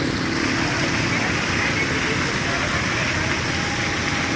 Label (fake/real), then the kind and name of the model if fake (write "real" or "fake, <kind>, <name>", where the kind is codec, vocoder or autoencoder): real